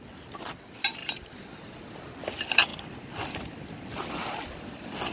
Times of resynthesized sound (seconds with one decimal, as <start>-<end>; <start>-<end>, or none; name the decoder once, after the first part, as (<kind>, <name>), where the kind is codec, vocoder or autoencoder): 1.0-1.8 (vocoder, BigVGAN v2); 2.7-3.5